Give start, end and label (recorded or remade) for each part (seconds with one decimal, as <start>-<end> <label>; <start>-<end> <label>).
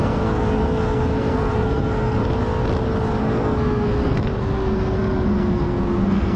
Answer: 0.0-2.2 remade; 2.2-3.2 recorded; 3.2-6.4 remade